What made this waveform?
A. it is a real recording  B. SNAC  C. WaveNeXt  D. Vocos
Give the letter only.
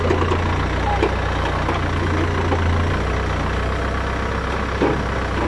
A